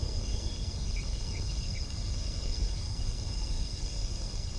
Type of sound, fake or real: fake